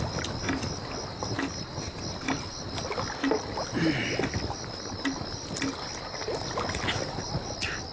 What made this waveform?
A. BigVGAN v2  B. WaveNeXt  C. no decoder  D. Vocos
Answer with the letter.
C